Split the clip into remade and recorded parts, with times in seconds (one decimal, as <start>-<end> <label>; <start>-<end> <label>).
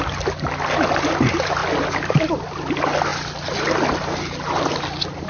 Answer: 0.0-5.3 recorded